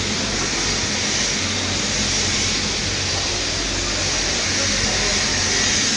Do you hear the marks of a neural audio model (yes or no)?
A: no